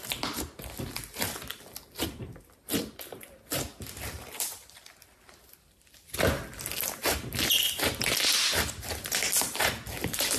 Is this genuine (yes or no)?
yes